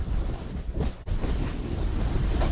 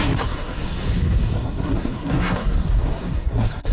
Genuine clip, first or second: first